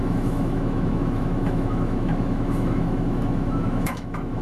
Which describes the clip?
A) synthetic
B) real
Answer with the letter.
A